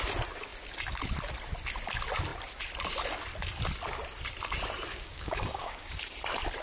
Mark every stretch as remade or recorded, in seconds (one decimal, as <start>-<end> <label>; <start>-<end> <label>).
0.0-4.9 recorded; 4.9-6.0 remade; 6.0-6.6 recorded